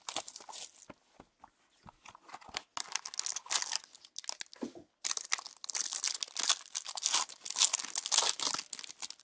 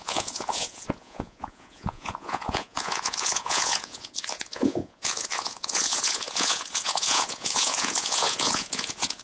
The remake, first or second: second